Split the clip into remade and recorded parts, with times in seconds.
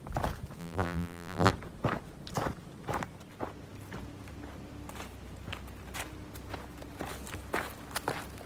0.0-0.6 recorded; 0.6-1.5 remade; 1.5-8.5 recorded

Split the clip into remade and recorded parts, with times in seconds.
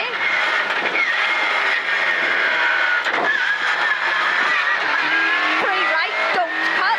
0.0-7.0 recorded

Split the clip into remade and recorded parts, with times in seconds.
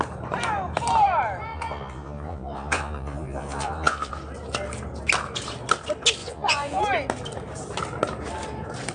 0.0-1.5 recorded; 1.5-4.1 remade; 4.1-6.2 recorded; 6.2-6.8 remade; 6.8-8.9 recorded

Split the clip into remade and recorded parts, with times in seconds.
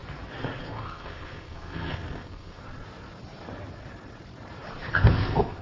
0.0-0.6 recorded; 0.6-2.6 remade; 2.6-4.9 recorded; 4.9-5.6 remade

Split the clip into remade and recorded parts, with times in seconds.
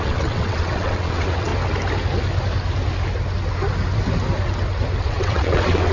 0.0-1.5 remade; 1.5-5.0 recorded; 5.0-5.9 remade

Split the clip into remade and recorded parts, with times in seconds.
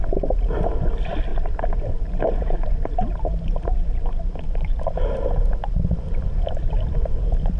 0.0-1.3 recorded; 1.3-4.8 remade; 4.8-7.6 recorded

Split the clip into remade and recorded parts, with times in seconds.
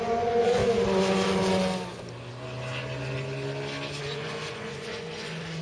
0.0-0.6 remade; 0.6-4.0 recorded; 4.0-5.6 remade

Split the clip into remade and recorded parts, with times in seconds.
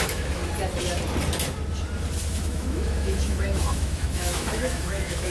0.0-0.4 remade; 0.4-2.3 recorded; 2.3-5.3 remade